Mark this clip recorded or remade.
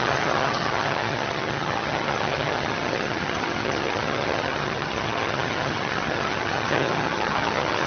remade